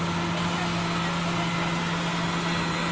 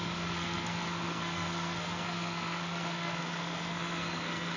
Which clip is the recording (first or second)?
first